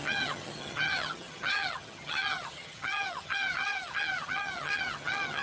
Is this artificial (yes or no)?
yes